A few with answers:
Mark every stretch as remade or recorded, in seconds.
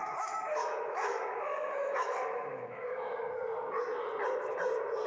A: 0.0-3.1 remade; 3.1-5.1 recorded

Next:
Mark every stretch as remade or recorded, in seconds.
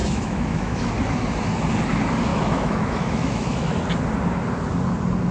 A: 0.0-0.9 remade; 0.9-2.3 recorded; 2.3-3.7 remade; 3.7-5.3 recorded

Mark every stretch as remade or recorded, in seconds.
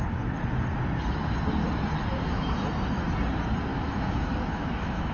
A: 0.0-3.7 recorded; 3.7-5.1 remade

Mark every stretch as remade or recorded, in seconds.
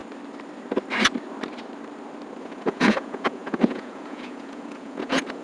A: 0.0-2.4 recorded; 2.4-5.4 remade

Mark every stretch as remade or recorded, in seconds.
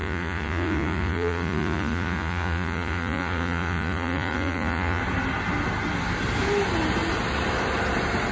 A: 0.0-5.0 remade; 5.0-8.3 recorded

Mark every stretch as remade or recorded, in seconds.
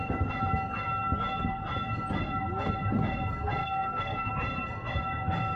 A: 0.0-3.6 recorded; 3.6-4.3 remade; 4.3-5.6 recorded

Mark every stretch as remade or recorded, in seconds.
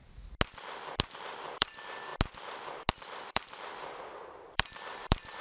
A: 0.0-1.0 recorded; 1.0-2.1 remade; 2.1-2.9 recorded; 2.9-5.4 remade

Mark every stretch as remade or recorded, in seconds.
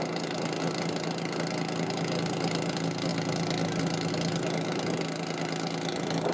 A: 0.0-6.3 recorded